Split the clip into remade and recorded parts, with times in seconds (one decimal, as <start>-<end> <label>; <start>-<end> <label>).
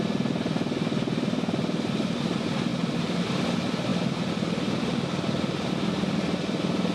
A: 0.0-6.9 recorded